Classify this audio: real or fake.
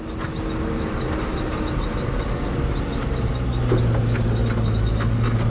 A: real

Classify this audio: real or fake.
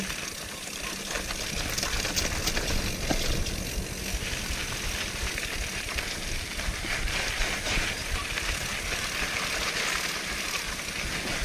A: real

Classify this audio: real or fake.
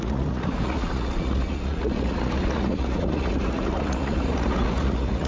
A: fake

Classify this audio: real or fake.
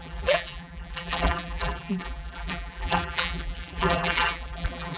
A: fake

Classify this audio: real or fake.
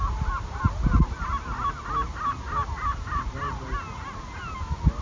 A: real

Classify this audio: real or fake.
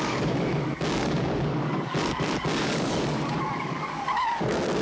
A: fake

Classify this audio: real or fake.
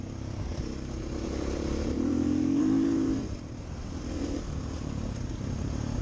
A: fake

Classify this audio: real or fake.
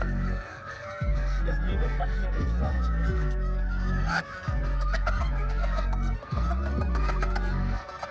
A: fake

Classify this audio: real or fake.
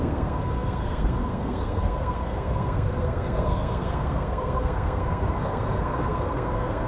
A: fake